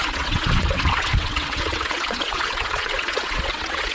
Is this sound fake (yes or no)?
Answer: yes